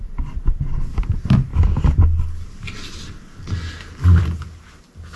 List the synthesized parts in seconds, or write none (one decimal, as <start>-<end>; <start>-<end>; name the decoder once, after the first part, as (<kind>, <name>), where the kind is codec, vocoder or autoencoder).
none